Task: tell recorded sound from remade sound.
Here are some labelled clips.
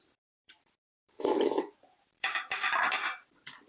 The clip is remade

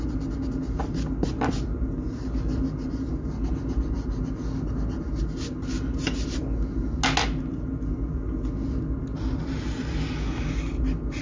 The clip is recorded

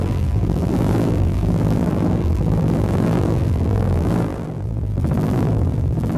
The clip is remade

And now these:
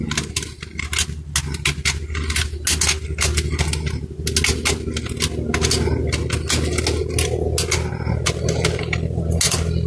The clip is recorded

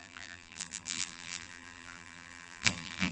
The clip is remade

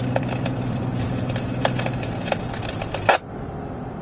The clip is remade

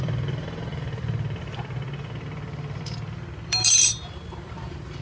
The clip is remade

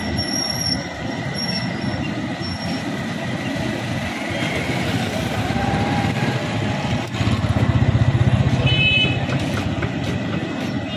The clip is recorded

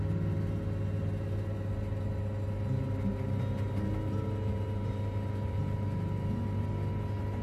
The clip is recorded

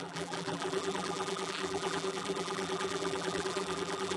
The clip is remade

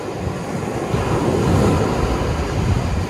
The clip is recorded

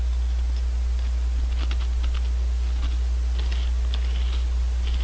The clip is recorded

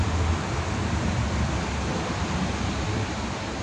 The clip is remade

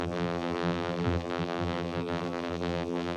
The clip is remade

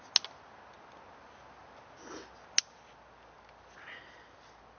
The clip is recorded